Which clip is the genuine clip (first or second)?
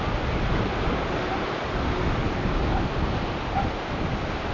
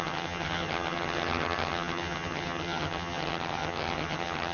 first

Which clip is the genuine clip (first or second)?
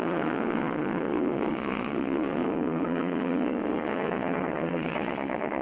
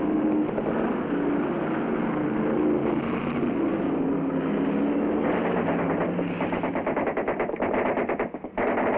second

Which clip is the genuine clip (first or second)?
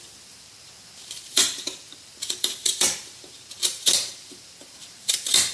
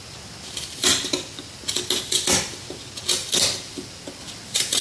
second